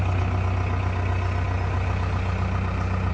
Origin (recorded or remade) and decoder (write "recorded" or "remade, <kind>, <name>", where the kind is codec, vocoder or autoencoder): recorded